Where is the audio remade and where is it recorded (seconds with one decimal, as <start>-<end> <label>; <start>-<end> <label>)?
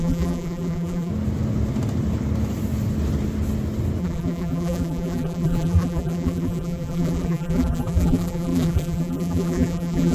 0.0-1.1 remade; 1.1-4.0 recorded; 4.0-10.1 remade